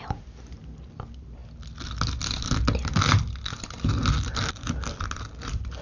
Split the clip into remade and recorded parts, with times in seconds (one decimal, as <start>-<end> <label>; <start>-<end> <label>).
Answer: 0.0-5.8 recorded